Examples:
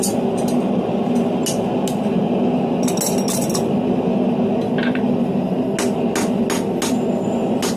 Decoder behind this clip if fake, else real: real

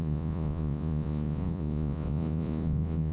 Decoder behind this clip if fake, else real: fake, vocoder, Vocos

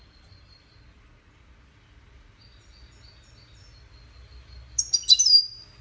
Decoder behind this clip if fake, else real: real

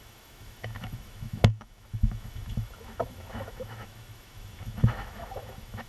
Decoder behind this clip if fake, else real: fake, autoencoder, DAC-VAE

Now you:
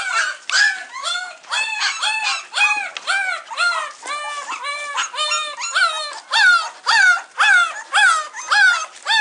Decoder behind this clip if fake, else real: real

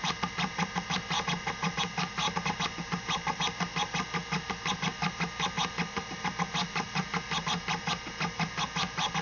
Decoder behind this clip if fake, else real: real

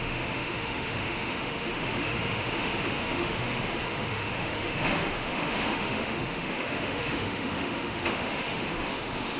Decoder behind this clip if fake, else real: fake, autoencoder, DAC-VAE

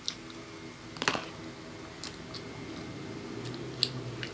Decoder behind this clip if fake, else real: real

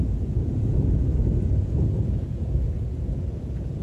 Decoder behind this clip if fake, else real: fake, vocoder, Vocos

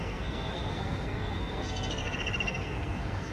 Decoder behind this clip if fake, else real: fake, codec, SNAC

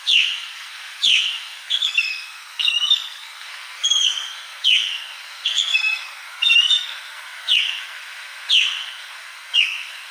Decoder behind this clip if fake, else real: fake, codec, SNAC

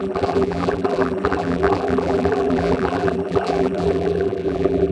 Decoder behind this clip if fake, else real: fake, vocoder, BigVGAN v2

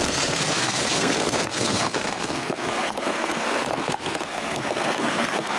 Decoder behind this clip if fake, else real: fake, codec, SNAC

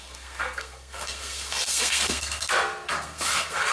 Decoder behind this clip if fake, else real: fake, codec, SNAC